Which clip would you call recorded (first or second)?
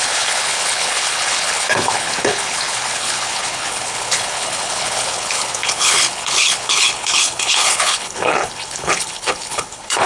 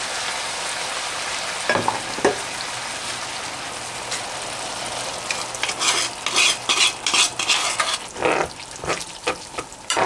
second